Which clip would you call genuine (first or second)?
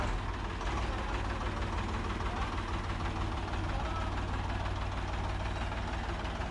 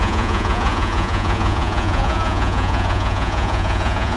first